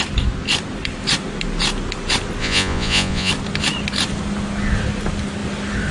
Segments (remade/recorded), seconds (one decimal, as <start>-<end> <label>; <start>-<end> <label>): 0.0-2.4 recorded; 2.4-3.3 remade; 3.3-5.9 recorded